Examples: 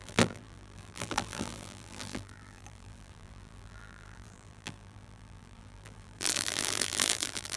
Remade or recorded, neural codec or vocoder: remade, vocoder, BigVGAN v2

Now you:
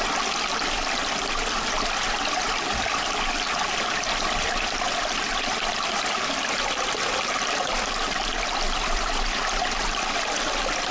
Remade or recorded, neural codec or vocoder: recorded